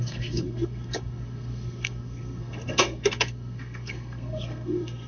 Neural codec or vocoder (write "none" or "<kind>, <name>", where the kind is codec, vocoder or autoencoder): codec, SNAC